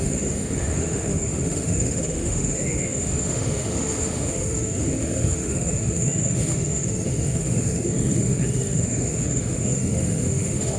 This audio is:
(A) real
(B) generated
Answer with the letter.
B